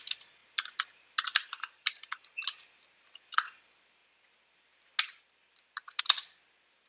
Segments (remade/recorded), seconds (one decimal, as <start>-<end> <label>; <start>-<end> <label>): 0.0-0.4 recorded; 0.4-2.1 remade; 2.1-6.9 recorded